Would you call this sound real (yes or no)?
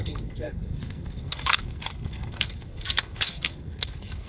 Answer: no